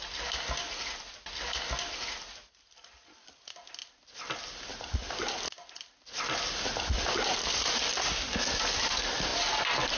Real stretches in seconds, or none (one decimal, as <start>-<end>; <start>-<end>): 0.0-10.0